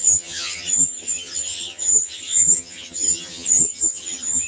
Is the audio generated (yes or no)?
yes